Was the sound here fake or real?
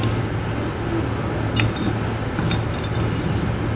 real